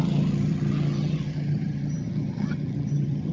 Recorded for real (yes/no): no